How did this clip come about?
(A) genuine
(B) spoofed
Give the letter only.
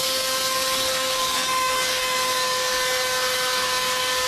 B